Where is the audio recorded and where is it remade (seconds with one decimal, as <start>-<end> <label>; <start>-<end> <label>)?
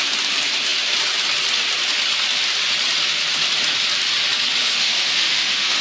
0.0-4.6 recorded; 4.6-5.8 remade